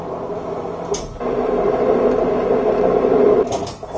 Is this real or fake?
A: real